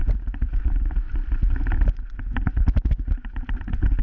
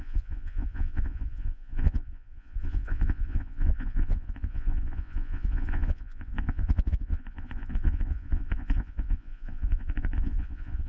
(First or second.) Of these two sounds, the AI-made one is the second